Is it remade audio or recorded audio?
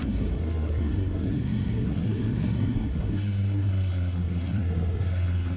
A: remade